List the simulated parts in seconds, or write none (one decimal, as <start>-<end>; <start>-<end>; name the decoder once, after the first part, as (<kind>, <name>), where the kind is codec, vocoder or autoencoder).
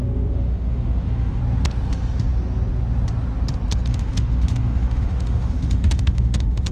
0.0-1.4 (autoencoder, DAC-VAE); 3.9-6.7